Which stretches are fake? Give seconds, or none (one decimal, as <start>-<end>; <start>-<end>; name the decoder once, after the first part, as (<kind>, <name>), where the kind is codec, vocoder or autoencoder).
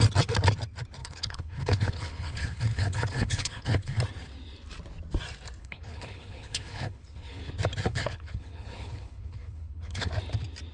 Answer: 1.0-4.0 (codec, HILCodec); 5.6-7.4; 7.9-10.1